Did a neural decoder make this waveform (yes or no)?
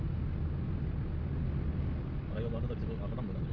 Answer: no